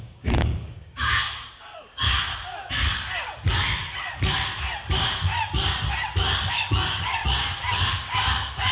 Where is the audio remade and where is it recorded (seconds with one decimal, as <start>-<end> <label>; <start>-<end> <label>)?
0.0-2.3 remade; 2.3-6.5 recorded; 6.5-7.2 remade; 7.2-7.9 recorded; 7.9-8.7 remade